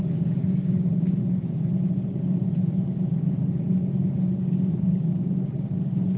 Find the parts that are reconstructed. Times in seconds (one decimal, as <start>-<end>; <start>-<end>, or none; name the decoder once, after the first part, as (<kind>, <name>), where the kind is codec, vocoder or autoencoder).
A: 0.0-1.2 (codec, DAC); 4.8-6.2